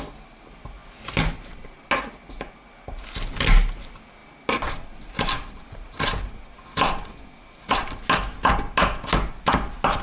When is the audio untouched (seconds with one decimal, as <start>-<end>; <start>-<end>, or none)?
0.0-10.0